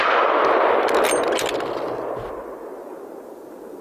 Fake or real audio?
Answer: real